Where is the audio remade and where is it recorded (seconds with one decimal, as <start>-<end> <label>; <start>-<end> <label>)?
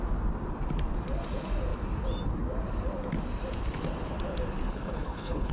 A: 0.0-4.7 recorded; 4.7-5.5 remade